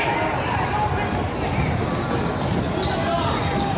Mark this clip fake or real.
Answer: real